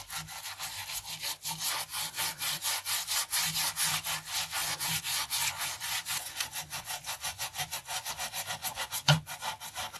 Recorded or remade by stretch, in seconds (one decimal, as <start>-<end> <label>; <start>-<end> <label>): 0.0-1.9 recorded; 1.9-2.9 remade; 2.9-4.6 recorded; 4.6-8.1 remade; 8.1-8.6 recorded; 8.6-9.5 remade; 9.5-10.0 recorded